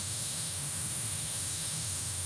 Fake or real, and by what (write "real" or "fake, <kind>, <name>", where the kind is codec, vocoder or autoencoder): fake, autoencoder, DAC-VAE